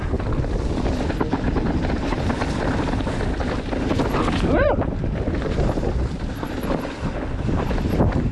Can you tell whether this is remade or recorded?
recorded